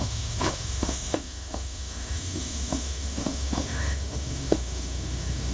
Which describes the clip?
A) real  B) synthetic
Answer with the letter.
B